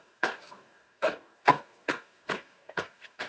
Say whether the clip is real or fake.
fake